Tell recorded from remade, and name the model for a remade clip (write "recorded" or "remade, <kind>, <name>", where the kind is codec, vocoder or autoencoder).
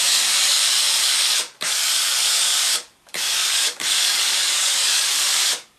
remade, codec, DAC